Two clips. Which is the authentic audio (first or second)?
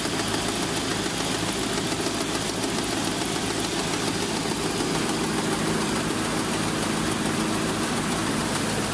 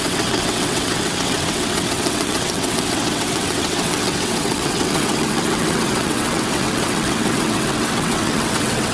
first